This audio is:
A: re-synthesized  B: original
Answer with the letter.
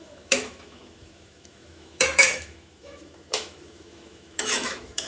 A